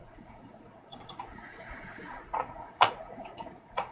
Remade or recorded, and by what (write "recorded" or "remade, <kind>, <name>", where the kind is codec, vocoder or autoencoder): remade, vocoder, Vocos